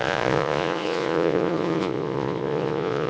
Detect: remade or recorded remade